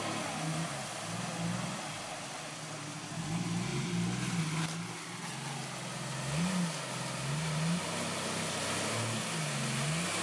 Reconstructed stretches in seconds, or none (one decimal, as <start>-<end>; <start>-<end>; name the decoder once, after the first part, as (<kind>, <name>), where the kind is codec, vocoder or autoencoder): none